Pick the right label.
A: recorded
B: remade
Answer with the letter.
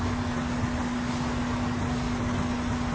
A